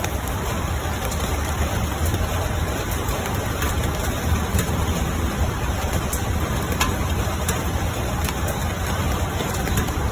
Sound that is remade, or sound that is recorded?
remade